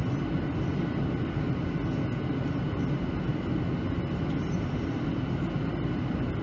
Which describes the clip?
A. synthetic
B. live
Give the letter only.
B